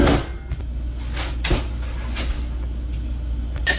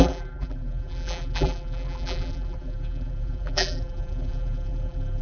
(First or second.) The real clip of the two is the first